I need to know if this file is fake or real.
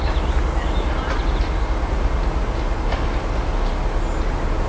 real